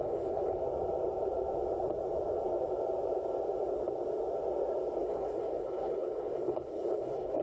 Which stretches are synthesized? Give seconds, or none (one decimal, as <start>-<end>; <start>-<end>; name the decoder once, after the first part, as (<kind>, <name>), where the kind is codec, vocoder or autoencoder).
0.0-0.6 (codec, HILCodec); 5.0-7.4